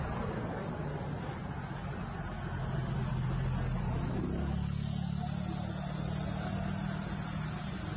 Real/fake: real